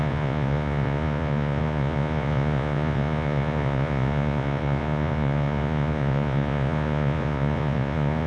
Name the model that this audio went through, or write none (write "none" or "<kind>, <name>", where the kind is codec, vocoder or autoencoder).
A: vocoder, Vocos